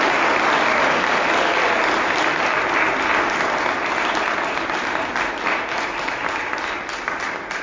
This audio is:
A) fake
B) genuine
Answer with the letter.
B